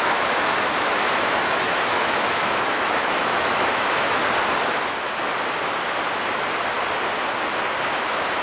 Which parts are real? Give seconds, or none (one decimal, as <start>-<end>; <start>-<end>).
4.2-8.0